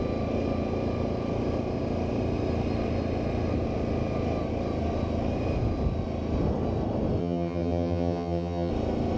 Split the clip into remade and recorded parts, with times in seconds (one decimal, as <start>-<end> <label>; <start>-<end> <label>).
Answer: 0.0-7.2 recorded; 7.2-8.7 remade; 8.7-9.2 recorded

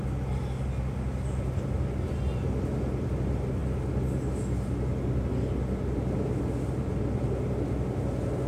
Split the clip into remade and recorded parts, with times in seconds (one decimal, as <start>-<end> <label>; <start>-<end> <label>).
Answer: 0.0-8.5 recorded

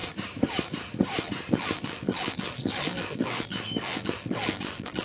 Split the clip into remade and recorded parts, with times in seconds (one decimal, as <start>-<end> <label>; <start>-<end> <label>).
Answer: 0.0-1.5 recorded; 1.5-5.0 remade

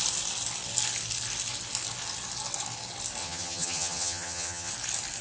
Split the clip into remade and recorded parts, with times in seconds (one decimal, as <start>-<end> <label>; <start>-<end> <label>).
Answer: 0.0-3.2 recorded; 3.2-4.7 remade; 4.7-5.2 recorded

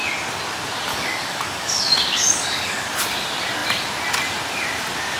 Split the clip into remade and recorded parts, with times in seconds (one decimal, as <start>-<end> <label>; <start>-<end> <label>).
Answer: 0.0-0.9 recorded; 0.9-2.9 remade; 2.9-5.2 recorded

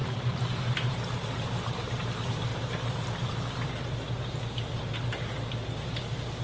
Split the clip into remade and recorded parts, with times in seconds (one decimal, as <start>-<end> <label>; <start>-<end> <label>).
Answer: 0.0-6.4 recorded

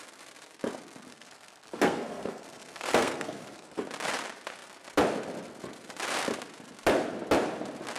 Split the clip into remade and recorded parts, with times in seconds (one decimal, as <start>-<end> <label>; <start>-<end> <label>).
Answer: 0.0-1.1 recorded; 1.1-3.8 remade; 3.8-8.0 recorded

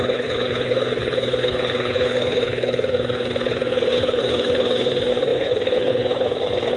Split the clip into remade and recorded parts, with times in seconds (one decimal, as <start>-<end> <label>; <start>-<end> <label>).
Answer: 0.0-6.8 remade